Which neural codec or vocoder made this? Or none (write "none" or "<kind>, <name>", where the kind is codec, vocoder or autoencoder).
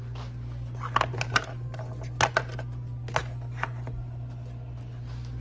none